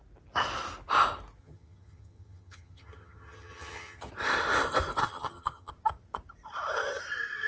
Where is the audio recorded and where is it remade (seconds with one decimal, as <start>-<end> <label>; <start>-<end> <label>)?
0.0-1.4 recorded; 1.4-4.1 remade; 4.1-5.0 recorded; 5.0-5.7 remade; 5.7-7.5 recorded

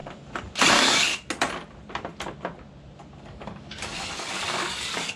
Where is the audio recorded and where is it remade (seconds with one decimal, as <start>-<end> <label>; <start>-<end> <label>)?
0.0-0.7 recorded; 0.7-1.1 remade; 1.1-3.2 recorded; 3.2-5.2 remade

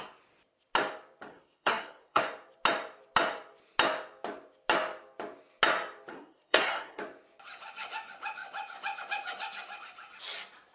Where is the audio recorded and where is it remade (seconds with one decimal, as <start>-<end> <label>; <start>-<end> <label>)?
0.0-1.3 recorded; 1.3-2.2 remade; 2.2-6.1 recorded; 6.1-7.0 remade; 7.0-10.7 recorded

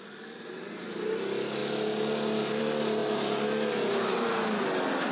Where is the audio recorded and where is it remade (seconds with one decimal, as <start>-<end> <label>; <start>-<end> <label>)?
0.0-5.1 recorded

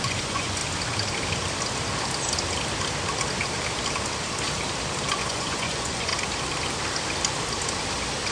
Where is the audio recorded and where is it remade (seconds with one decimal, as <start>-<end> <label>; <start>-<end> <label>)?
0.0-0.6 remade; 0.6-5.1 recorded; 5.1-6.1 remade; 6.1-8.3 recorded

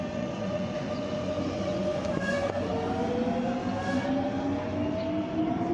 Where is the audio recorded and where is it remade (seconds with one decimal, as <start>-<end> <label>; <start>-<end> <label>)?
0.0-2.7 remade; 2.7-5.7 recorded

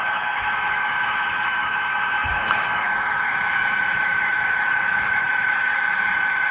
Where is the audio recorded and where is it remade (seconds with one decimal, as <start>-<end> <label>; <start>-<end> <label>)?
0.0-6.5 remade

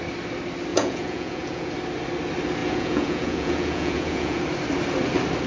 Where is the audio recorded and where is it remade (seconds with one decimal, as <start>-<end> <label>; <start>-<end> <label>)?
0.0-0.7 recorded; 0.7-1.7 remade; 1.7-2.6 recorded; 2.6-4.4 remade; 4.4-5.5 recorded